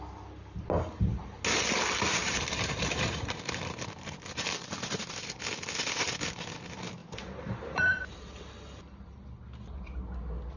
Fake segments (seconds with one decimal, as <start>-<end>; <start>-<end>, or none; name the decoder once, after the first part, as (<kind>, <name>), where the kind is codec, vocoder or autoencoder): 2.2-5.0 (vocoder, BigVGAN v2); 7.0-8.0